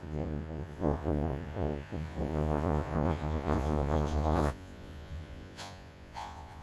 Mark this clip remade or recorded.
remade